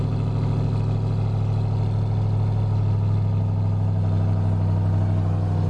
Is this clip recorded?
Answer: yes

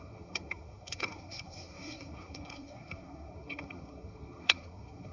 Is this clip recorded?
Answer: no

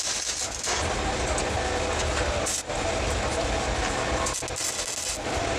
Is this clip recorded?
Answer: yes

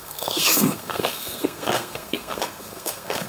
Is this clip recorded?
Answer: no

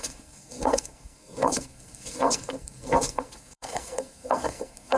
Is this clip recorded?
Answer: no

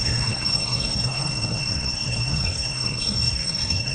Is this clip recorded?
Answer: no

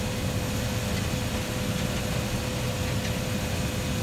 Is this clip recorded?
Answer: yes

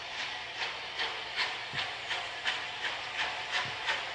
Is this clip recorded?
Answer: yes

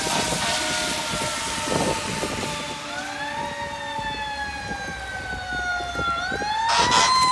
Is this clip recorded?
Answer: yes